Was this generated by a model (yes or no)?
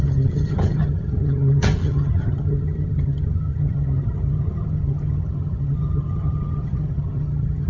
yes